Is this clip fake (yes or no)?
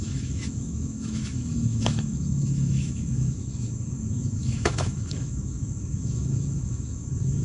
yes